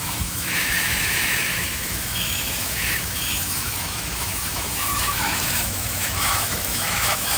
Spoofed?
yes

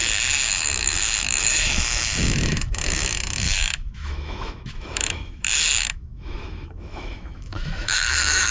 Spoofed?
yes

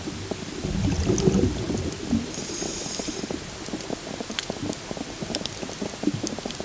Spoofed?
no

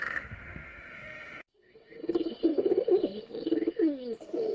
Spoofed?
yes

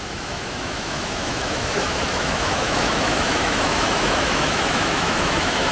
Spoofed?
yes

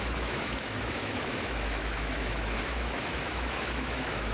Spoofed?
yes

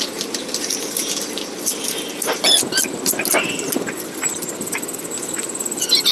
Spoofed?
no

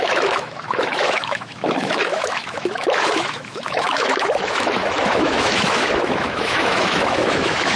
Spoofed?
yes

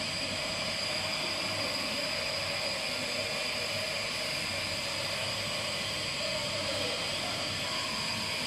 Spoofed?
no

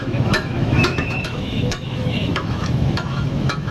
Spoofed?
yes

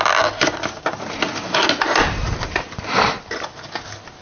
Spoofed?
no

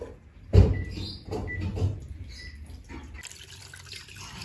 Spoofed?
no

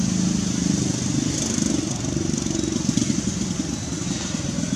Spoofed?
no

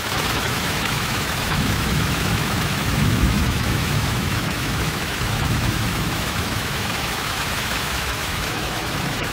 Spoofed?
yes